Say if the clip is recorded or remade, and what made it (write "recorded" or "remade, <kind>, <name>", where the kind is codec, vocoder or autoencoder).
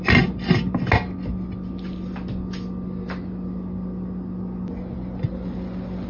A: recorded